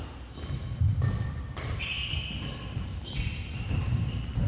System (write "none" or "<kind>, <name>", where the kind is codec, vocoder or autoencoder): none